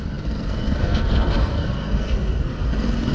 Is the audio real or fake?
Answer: fake